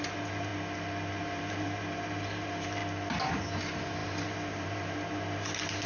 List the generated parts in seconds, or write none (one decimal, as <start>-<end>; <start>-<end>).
0.0-0.5; 1.2-2.8; 3.3-5.9